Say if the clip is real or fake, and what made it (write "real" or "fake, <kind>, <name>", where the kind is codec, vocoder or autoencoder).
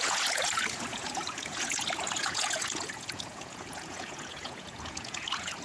fake, vocoder, Vocos